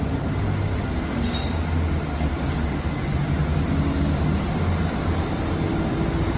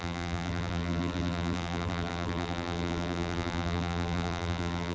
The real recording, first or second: first